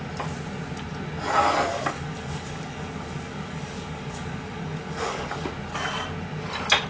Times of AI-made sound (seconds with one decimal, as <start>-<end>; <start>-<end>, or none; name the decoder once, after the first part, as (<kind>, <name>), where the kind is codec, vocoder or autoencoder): 1.7-5.5 (codec, DAC)